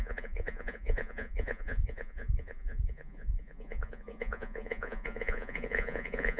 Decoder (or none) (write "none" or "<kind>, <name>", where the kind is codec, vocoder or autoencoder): vocoder, Vocos